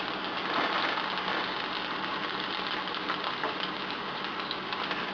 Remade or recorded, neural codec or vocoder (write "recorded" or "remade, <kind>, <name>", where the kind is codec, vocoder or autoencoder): recorded